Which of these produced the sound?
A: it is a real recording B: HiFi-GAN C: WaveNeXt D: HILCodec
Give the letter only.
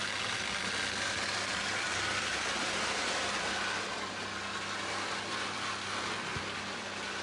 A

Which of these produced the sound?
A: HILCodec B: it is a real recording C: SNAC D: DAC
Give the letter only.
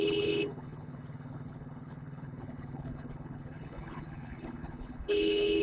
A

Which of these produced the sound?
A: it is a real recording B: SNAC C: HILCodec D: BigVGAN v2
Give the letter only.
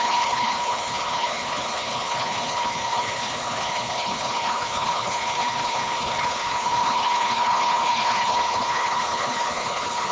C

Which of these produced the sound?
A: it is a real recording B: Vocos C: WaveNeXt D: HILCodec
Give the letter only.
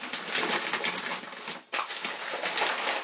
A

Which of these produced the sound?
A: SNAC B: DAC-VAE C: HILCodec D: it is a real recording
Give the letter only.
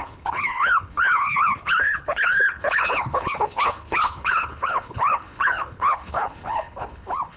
C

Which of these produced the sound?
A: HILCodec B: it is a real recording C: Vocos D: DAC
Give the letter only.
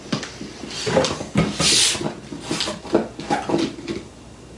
B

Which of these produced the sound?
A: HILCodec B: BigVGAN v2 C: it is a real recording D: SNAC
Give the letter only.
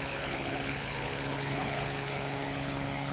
A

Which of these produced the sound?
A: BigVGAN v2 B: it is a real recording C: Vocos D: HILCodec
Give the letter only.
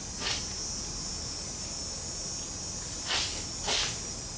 B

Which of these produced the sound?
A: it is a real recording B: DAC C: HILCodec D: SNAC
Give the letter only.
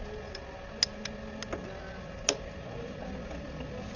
A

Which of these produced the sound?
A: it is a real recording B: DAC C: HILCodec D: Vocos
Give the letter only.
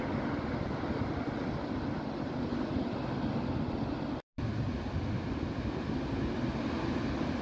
A